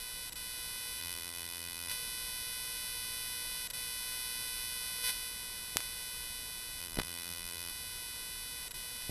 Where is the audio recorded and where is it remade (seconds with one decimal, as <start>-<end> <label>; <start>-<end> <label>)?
0.0-1.0 recorded; 1.0-1.9 remade; 1.9-6.8 recorded; 6.8-7.7 remade; 7.7-9.1 recorded